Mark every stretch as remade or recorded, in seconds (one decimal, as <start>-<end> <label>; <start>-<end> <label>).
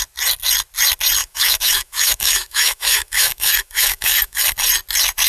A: 0.0-1.2 recorded; 1.2-4.4 remade; 4.4-5.3 recorded